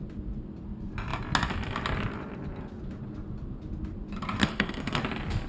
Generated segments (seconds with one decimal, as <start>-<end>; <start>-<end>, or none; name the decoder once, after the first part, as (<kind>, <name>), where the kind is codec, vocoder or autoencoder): 4.4-5.0 (codec, SNAC)